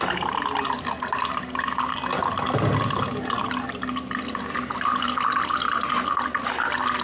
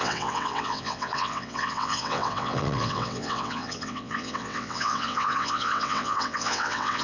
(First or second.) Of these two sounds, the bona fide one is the first